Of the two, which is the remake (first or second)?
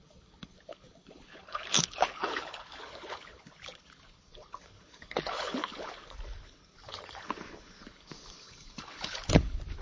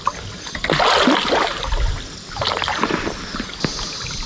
first